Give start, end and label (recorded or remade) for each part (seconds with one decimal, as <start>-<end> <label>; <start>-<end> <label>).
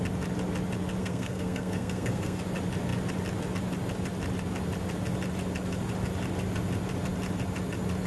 0.0-1.0 recorded; 1.0-2.4 remade; 2.4-8.1 recorded